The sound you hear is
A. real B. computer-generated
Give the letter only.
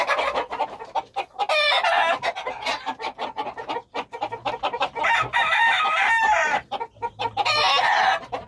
A